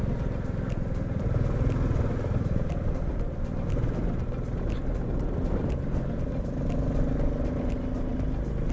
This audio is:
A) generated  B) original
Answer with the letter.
B